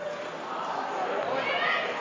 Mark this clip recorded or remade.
recorded